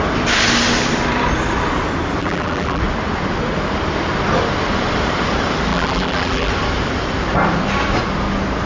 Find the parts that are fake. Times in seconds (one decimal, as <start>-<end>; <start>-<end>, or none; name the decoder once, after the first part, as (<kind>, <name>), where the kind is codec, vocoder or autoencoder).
2.2-2.8 (vocoder, BigVGAN v2); 5.7-6.5